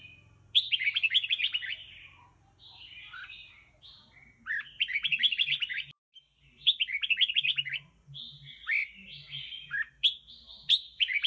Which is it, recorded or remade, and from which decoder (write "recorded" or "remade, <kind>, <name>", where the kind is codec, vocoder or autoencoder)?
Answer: recorded